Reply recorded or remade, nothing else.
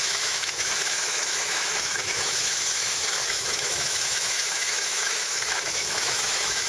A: remade